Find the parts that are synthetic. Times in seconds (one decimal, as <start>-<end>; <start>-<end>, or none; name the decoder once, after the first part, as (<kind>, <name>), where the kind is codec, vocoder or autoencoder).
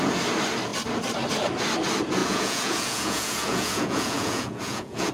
2.2-5.1 (vocoder, Vocos)